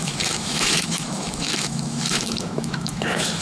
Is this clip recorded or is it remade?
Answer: remade